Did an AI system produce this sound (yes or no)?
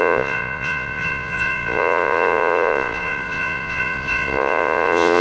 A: yes